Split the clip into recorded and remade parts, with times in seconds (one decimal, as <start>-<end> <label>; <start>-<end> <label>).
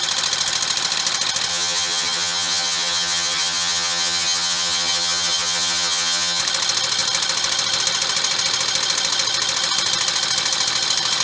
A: 0.0-1.5 recorded; 1.5-6.4 remade; 6.4-11.2 recorded